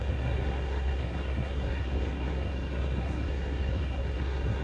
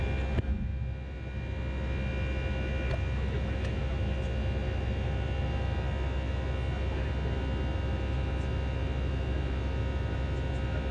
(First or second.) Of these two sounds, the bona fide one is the second